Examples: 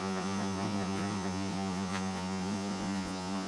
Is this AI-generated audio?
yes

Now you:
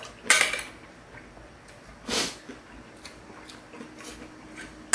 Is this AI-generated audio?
no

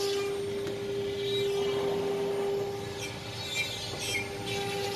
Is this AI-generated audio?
no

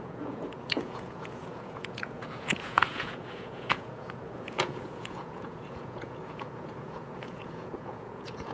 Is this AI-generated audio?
yes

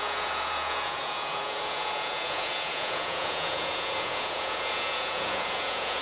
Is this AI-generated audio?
yes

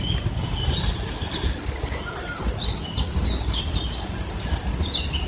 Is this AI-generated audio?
no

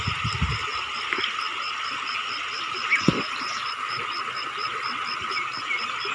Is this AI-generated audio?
no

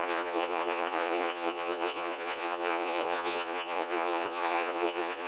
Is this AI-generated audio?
yes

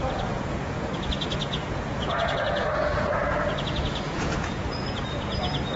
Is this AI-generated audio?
yes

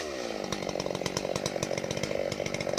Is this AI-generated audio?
no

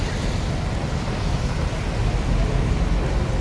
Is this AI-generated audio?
no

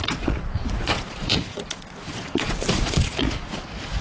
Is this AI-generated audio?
yes